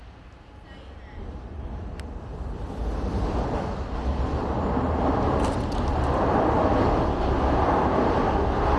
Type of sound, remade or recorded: recorded